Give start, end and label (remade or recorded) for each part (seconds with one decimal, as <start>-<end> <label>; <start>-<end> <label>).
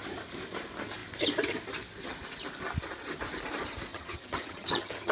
0.0-3.9 recorded; 3.9-5.1 remade